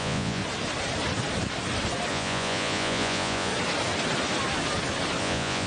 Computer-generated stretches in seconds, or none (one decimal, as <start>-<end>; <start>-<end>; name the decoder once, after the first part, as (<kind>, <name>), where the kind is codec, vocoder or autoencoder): 0.0-0.4 (vocoder, Vocos); 2.1-3.5; 5.2-5.7